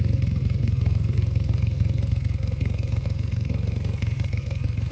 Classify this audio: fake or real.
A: fake